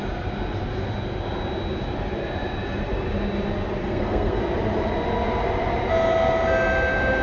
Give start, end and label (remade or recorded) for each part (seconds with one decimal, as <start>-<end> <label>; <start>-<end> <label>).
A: 0.0-3.8 recorded; 3.8-4.4 remade; 4.4-7.2 recorded